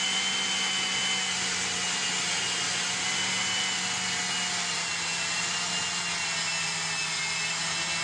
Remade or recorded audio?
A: recorded